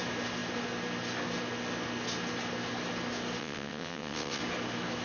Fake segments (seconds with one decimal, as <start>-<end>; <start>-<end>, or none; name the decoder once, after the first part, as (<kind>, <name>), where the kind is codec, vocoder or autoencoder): 3.4-4.4 (vocoder, WaveNeXt)